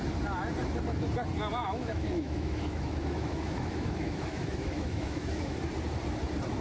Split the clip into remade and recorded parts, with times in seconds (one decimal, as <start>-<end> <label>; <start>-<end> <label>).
0.0-1.6 recorded; 1.6-5.6 remade; 5.6-6.6 recorded

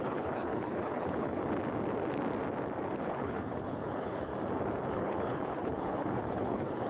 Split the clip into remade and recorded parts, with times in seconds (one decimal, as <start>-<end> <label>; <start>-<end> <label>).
0.0-1.4 remade; 1.4-3.0 recorded; 3.0-4.3 remade; 4.3-4.9 recorded; 4.9-6.9 remade